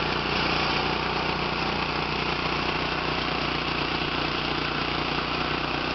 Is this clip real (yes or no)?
yes